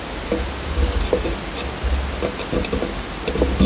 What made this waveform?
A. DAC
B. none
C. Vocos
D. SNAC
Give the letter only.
B